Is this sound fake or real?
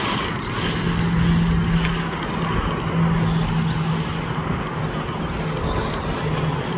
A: real